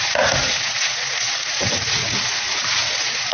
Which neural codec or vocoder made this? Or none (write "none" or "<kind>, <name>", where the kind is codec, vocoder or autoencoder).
vocoder, Vocos